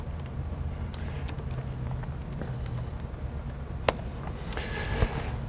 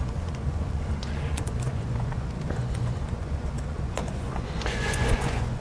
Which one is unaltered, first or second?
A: first